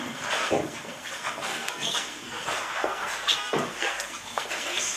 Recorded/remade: remade